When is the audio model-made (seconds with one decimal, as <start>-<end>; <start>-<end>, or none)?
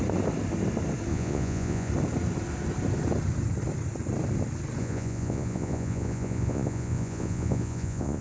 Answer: 1.1-1.9; 4.8-8.2